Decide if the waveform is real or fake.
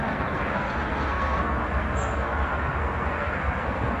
fake